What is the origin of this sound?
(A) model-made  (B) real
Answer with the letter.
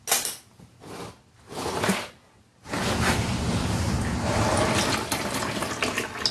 B